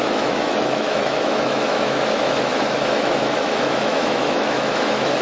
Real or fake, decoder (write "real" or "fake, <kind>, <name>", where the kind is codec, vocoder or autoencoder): fake, autoencoder, DAC-VAE